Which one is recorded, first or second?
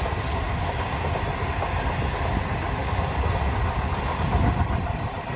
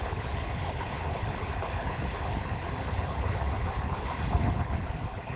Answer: first